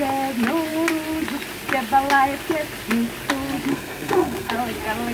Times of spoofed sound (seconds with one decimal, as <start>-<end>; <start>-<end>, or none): 3.7-4.5